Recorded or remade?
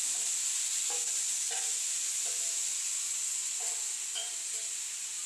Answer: recorded